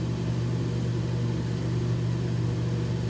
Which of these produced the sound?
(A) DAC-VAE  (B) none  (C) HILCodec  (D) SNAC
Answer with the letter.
B